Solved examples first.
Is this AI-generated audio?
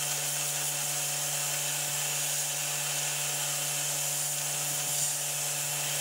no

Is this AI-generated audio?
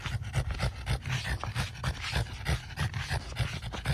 no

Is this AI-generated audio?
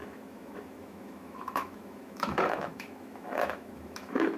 yes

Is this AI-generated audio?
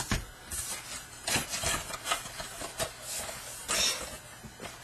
no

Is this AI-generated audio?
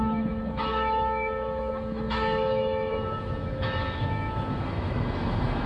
yes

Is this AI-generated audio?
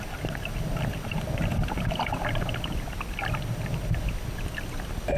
no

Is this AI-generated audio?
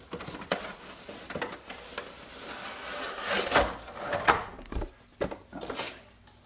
no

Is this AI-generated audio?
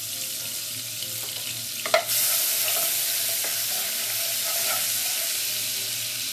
no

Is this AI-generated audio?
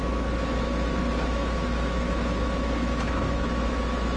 yes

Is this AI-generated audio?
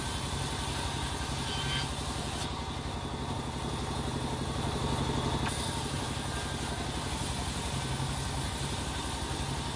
no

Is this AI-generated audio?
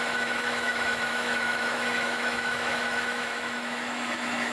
yes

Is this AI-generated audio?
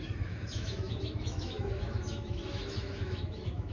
yes